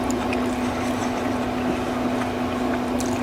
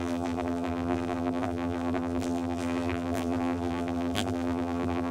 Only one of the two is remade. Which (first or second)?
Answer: second